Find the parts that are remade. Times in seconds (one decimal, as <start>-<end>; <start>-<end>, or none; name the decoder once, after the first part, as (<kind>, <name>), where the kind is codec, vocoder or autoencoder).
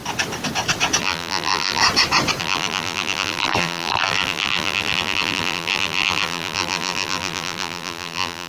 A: 1.0-1.8 (vocoder, BigVGAN v2); 2.4-8.5